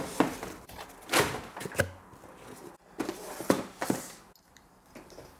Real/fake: real